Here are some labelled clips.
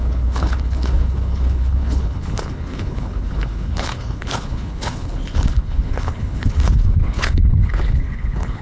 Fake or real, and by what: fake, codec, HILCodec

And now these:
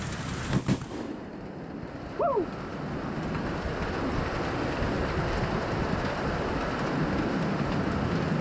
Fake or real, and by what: real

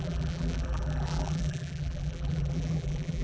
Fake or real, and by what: fake, vocoder, BigVGAN v2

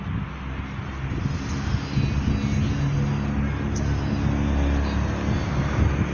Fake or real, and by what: real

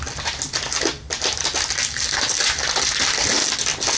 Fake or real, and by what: real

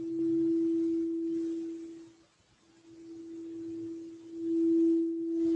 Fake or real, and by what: real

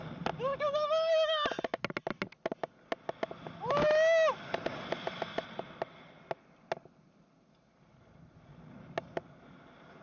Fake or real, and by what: real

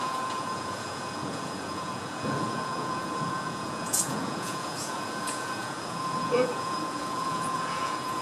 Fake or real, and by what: fake, vocoder, Vocos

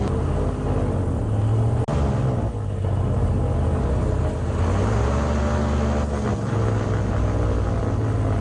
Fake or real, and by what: real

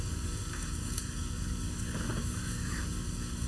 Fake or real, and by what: fake, codec, DAC